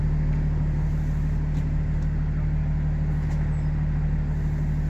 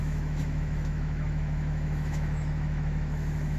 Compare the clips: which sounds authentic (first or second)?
first